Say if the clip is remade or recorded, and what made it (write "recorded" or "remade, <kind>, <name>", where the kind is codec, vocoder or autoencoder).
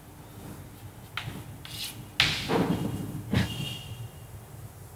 recorded